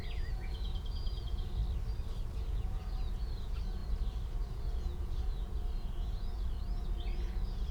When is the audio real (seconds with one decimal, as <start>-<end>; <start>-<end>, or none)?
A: 1.6-2.4; 3.8-4.5